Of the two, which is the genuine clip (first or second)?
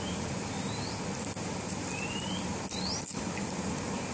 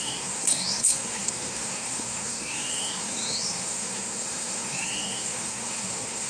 first